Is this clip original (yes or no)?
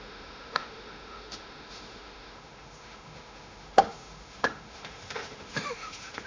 no